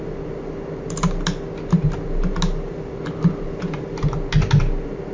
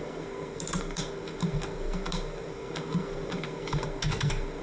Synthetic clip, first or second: second